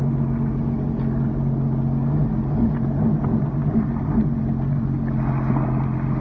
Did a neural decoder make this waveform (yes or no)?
no